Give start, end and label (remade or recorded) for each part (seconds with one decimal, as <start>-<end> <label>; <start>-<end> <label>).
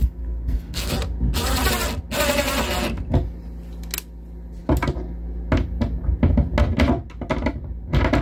0.0-0.9 remade; 0.9-8.2 recorded